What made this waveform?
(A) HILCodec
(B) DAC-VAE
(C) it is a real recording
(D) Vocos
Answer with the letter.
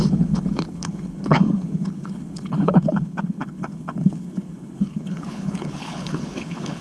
A